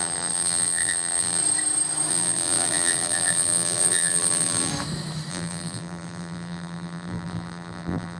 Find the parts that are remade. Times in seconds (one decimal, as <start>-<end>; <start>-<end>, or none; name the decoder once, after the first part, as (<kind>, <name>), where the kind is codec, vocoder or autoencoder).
0.0-1.4 (vocoder, BigVGAN v2); 2.1-4.7; 5.3-8.2